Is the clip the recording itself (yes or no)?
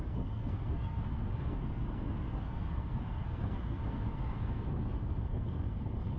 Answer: no